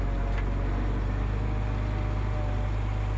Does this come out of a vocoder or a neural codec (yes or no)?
no